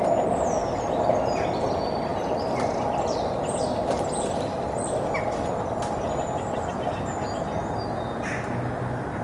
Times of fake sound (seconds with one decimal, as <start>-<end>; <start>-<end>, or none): none